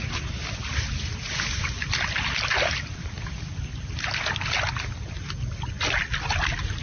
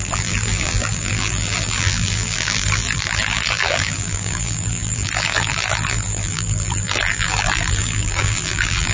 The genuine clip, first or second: first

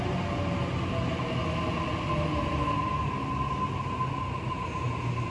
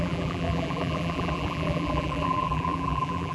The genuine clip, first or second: first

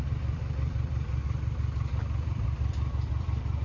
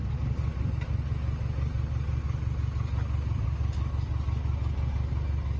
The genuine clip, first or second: second